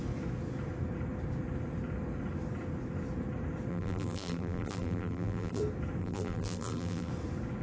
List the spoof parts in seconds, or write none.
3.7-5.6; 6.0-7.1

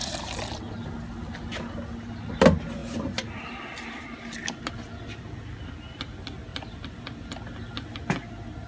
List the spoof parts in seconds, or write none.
0.0-0.6; 2.8-4.7; 6.5-7.0